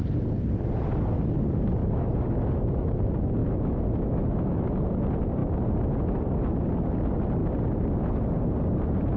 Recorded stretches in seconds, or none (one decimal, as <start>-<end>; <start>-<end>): 0.0-1.8; 3.0-3.4; 4.6-9.2